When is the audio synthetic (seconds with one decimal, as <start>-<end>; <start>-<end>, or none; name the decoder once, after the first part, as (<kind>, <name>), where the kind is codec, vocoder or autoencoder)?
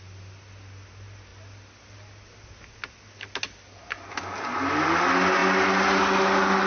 none